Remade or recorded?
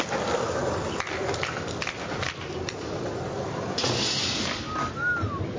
recorded